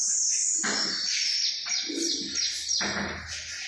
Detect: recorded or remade recorded